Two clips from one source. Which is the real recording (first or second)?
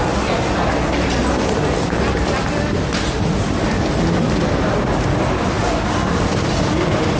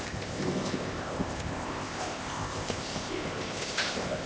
first